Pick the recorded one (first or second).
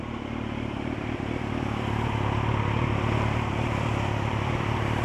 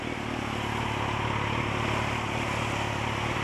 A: second